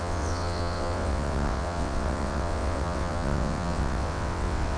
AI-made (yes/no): yes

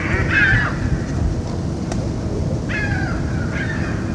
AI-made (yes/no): no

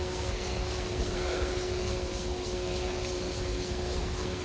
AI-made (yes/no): yes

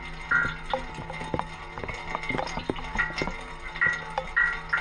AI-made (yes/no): no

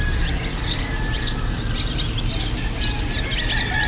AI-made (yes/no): no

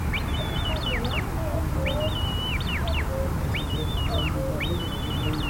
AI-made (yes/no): no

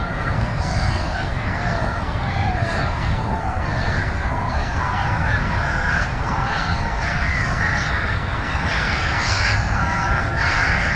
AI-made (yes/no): yes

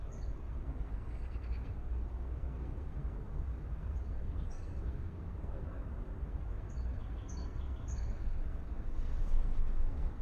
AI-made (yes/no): yes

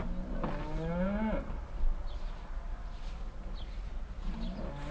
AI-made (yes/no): no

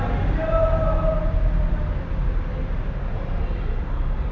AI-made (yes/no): no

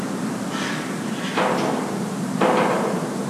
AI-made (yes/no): no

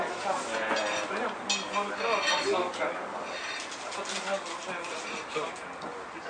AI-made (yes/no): no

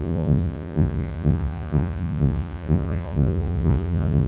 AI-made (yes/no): yes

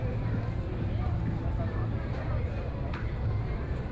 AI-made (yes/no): no